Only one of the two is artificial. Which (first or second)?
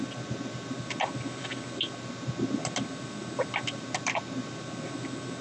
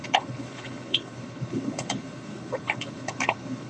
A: second